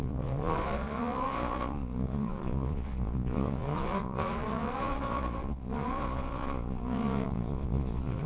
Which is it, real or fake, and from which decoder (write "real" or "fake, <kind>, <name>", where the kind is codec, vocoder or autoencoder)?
fake, vocoder, Vocos